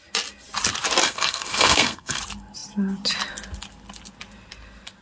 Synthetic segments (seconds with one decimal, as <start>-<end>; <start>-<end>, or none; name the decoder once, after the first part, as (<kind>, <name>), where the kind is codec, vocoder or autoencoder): 1.0-2.2 (codec, SNAC)